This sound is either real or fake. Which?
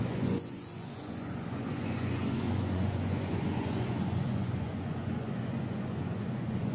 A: fake